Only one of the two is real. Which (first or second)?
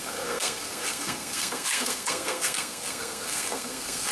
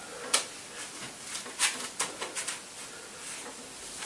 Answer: second